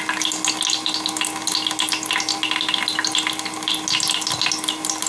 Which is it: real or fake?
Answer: real